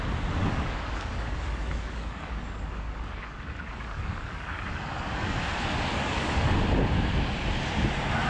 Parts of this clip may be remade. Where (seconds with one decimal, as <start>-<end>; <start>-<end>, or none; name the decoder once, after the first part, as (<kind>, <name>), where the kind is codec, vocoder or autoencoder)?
0.4-5.4 (codec, DAC); 5.9-6.5